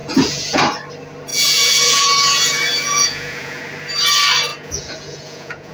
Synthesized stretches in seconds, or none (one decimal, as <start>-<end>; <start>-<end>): 0.0-0.6; 1.3-3.6; 4.5-5.7